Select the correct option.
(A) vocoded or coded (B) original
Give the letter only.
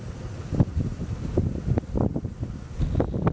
B